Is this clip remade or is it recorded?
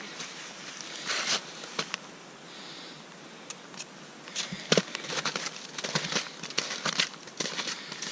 recorded